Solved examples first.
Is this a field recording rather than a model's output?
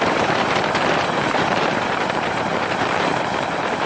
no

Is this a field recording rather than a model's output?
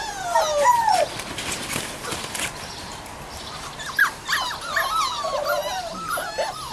yes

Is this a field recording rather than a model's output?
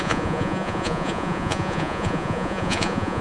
no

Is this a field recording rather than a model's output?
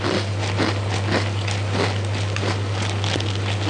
yes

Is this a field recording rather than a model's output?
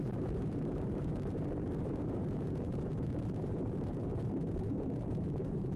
no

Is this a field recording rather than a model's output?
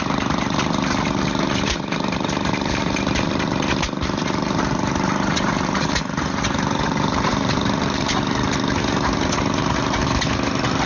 no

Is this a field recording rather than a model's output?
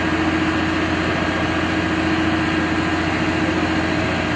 yes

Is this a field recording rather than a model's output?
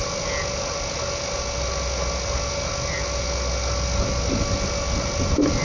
yes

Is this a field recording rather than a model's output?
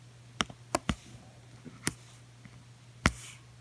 yes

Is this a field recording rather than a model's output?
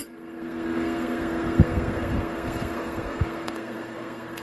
no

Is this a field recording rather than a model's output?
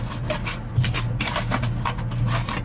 yes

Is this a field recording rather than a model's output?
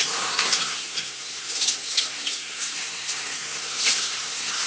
no